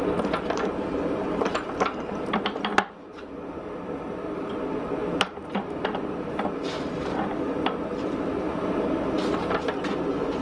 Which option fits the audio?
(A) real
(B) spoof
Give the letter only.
B